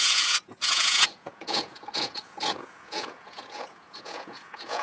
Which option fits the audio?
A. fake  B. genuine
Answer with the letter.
A